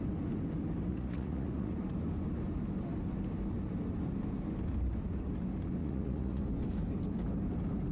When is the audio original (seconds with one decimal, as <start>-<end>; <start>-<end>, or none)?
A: 0.0-0.9; 1.8-5.8; 6.4-7.9